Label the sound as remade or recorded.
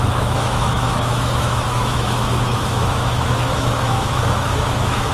remade